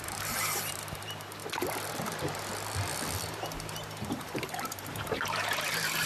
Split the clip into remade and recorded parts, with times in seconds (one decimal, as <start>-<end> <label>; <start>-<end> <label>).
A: 0.0-1.4 remade; 1.4-1.9 recorded; 1.9-2.5 remade; 2.5-4.1 recorded; 4.1-6.1 remade